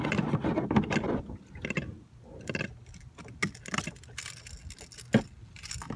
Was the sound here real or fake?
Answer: real